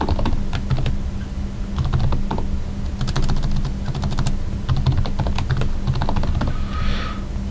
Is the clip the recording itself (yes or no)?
yes